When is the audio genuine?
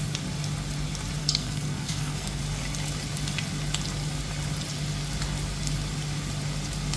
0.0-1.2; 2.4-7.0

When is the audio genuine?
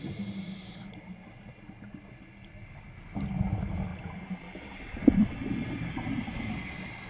0.0-7.1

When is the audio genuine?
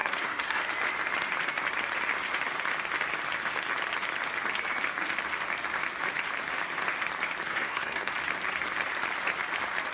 0.6-7.5; 8.1-9.9